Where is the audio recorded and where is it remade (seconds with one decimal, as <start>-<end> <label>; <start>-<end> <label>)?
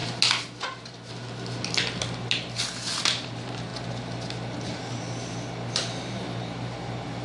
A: 0.0-7.2 recorded